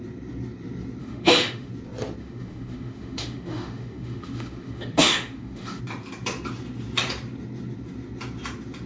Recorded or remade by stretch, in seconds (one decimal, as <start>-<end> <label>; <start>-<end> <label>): 0.0-1.0 recorded; 1.0-1.7 remade; 1.7-2.2 recorded; 2.2-5.8 remade; 5.8-8.9 recorded